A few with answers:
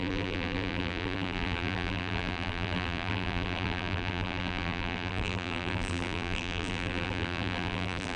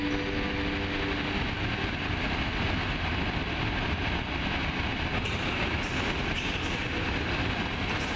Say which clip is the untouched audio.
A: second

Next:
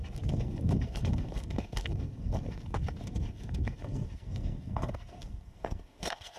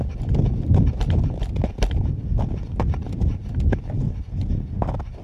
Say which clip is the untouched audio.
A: second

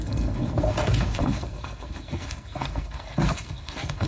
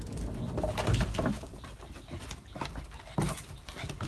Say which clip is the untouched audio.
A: second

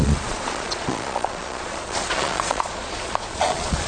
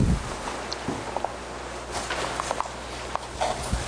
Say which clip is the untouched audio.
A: second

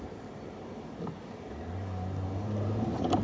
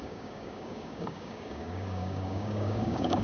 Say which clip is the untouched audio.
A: first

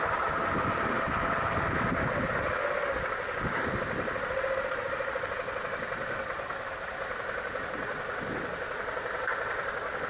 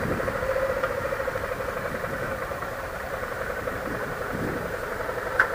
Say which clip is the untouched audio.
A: first